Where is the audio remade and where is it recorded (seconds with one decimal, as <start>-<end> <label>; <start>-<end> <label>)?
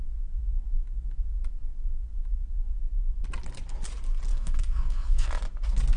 0.0-4.3 recorded; 4.3-5.3 remade; 5.3-6.0 recorded